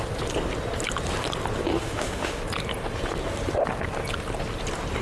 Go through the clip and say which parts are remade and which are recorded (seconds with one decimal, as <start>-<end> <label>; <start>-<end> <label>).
0.0-1.7 recorded; 1.7-2.4 remade; 2.4-5.0 recorded